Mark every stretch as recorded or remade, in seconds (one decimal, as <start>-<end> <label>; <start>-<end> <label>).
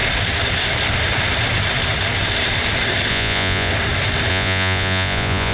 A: 0.0-3.1 recorded; 3.1-3.7 remade; 3.7-4.3 recorded; 4.3-5.5 remade